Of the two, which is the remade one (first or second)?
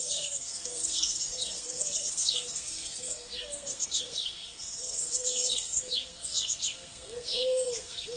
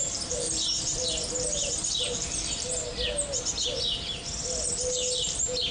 first